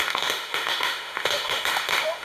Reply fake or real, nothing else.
fake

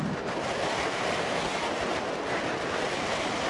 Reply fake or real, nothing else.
real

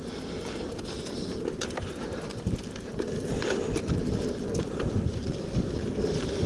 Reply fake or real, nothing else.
real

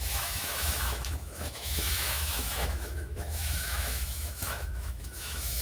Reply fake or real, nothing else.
fake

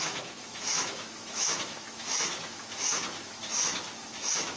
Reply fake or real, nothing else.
fake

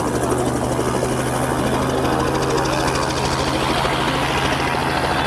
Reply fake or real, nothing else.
real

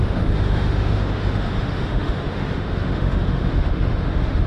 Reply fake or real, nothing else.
fake